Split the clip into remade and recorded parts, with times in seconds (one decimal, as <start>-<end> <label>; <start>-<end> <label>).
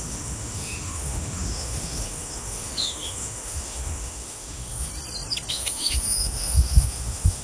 0.0-4.9 remade; 4.9-5.5 recorded; 5.5-7.4 remade